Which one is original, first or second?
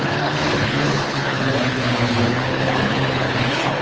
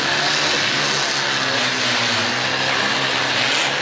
second